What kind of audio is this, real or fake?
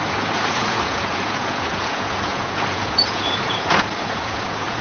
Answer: fake